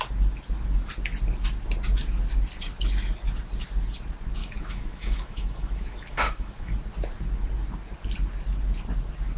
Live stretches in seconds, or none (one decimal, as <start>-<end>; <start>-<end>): 0.0-4.4; 6.7-9.4